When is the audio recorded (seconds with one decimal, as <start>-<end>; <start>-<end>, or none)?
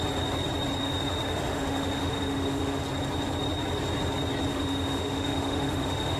0.0-0.8; 2.8-4.5